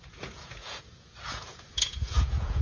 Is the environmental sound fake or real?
fake